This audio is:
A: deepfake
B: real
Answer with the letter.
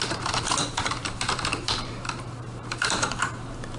A